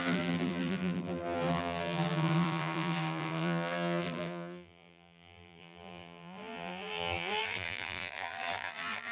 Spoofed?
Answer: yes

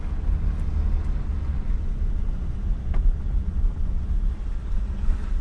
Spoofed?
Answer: no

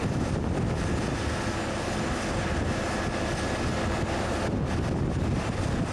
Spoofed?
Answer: no